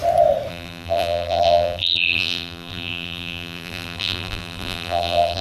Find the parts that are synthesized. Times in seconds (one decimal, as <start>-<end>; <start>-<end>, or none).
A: 0.5-5.4